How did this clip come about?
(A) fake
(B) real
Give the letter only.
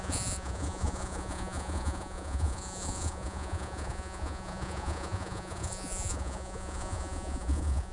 A